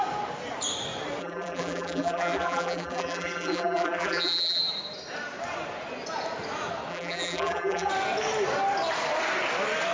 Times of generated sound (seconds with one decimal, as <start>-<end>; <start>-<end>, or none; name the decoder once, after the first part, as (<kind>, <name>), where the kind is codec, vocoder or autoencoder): 1.2-4.6 (vocoder, BigVGAN v2); 6.9-7.9